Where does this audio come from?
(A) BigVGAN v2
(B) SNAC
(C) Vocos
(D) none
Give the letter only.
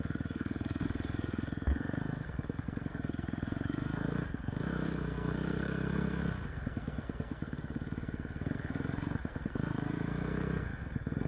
B